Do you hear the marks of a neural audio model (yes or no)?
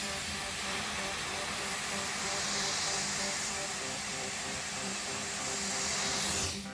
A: yes